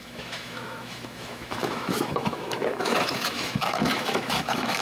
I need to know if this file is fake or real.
fake